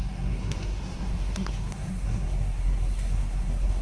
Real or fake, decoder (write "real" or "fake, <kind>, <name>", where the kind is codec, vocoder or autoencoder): fake, codec, SNAC